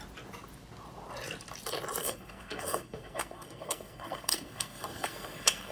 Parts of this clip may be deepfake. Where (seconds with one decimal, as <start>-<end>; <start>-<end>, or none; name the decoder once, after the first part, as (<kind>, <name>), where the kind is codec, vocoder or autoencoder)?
2.0-5.7 (codec, SNAC)